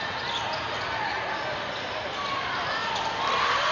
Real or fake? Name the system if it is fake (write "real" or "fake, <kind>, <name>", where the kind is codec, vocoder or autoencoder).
real